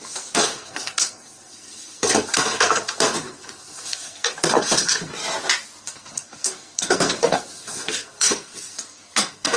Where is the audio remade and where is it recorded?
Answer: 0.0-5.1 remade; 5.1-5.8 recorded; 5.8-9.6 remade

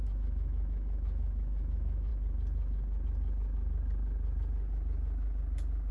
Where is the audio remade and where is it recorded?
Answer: 0.0-2.1 remade; 2.1-5.9 recorded